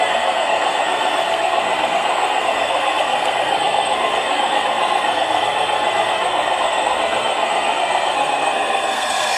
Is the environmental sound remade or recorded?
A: remade